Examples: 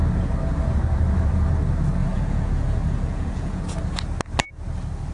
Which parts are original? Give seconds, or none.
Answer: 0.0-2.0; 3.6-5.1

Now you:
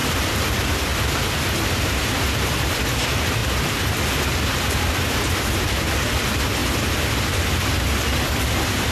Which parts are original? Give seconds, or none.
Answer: none

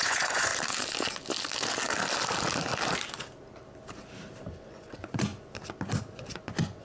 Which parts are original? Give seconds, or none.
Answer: 0.5-4.6; 5.3-6.0

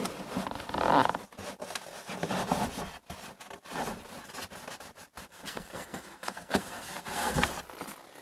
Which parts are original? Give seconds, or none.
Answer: 0.0-5.2; 7.5-8.2

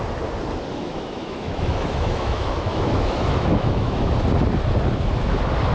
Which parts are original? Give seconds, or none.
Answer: 0.0-0.7; 4.1-5.7

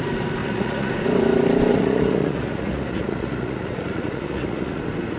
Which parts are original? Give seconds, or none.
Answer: 0.0-0.4; 0.9-1.7; 4.8-5.2